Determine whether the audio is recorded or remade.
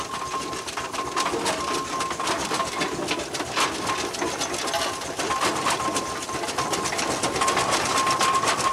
recorded